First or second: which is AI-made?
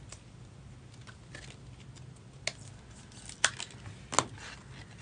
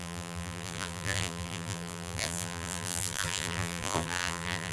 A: second